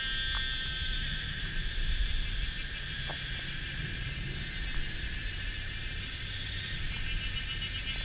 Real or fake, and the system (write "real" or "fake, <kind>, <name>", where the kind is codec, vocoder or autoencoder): real